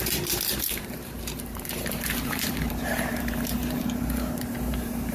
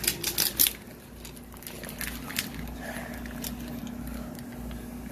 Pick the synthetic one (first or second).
first